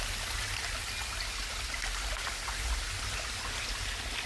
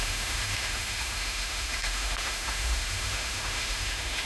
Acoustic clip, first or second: first